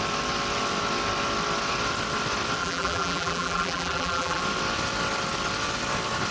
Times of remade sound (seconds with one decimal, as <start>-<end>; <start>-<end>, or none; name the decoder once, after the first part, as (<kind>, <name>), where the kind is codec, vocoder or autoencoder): 2.6-4.4 (vocoder, BigVGAN v2)